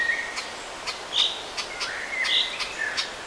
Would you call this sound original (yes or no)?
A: yes